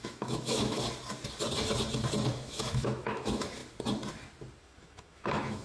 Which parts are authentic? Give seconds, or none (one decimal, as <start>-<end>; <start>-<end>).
0.8-2.3; 3.6-4.6